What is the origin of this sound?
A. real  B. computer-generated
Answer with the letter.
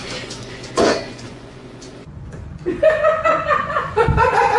B